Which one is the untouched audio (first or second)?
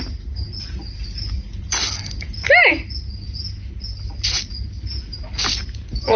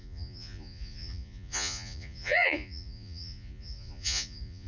first